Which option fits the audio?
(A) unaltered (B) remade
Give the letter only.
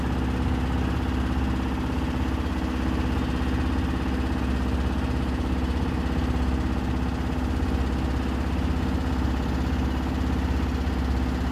A